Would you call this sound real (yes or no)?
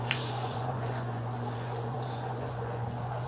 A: no